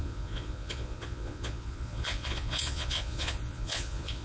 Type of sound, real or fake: fake